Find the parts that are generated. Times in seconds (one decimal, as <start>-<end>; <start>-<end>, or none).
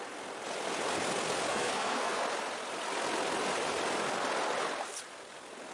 1.5-2.2